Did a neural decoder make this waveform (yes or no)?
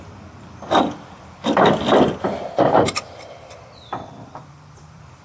yes